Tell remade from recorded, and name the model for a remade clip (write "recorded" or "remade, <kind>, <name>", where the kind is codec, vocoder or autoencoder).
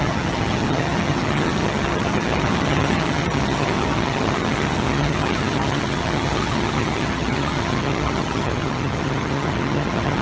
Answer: remade, vocoder, HiFi-GAN